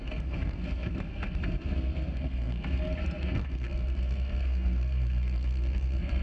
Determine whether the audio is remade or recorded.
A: remade